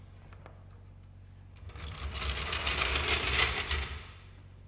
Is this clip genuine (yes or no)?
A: yes